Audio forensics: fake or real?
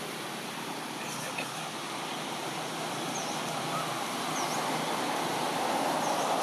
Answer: real